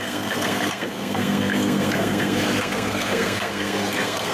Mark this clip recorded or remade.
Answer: remade